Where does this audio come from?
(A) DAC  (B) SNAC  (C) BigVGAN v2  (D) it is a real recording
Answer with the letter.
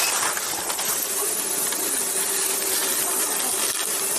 D